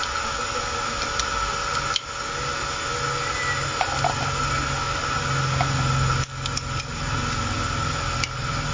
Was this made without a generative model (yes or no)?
yes